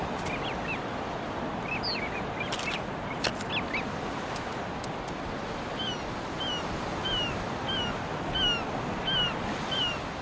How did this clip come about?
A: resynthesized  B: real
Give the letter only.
B